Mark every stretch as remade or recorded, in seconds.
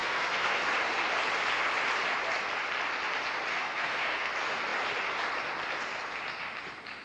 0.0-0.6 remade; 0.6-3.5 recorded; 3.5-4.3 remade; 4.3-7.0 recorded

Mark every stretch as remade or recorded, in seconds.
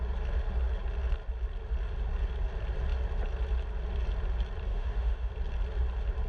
0.0-4.7 recorded; 4.7-5.3 remade; 5.3-6.3 recorded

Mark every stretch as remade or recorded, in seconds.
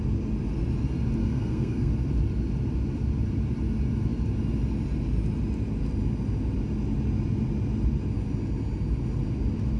0.0-1.2 recorded; 1.2-1.9 remade; 1.9-9.8 recorded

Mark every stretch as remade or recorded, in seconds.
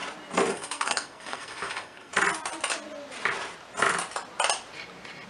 0.0-0.5 recorded; 0.5-2.1 remade; 2.1-5.3 recorded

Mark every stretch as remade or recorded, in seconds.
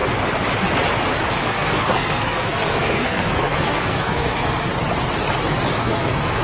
0.0-1.3 recorded; 1.3-4.7 remade; 4.7-5.8 recorded; 5.8-6.4 remade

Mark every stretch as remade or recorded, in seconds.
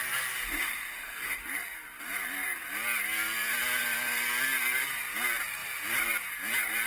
0.0-0.5 recorded; 0.5-1.4 remade; 1.4-6.9 recorded